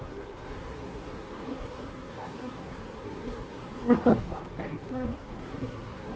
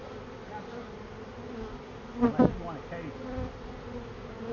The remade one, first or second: first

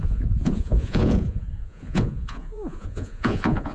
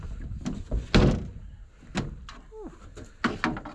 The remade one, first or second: first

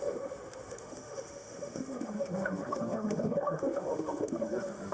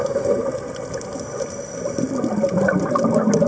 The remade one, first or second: first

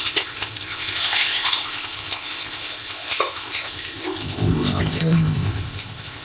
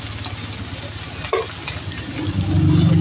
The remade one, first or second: first